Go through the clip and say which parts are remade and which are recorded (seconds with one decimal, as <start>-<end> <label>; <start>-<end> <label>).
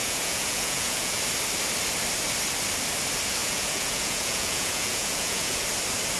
0.0-1.2 remade; 1.2-3.4 recorded; 3.4-5.6 remade; 5.6-6.2 recorded